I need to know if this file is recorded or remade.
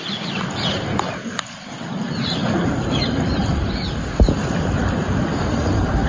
recorded